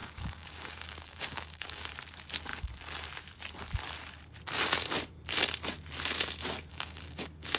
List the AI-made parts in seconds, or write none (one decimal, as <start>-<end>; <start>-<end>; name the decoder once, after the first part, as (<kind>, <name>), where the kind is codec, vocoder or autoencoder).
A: 0.0-1.9 (codec, DAC); 6.7-7.6